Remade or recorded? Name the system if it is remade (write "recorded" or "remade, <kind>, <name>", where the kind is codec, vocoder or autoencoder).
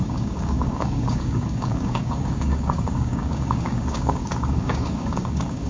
remade, codec, DAC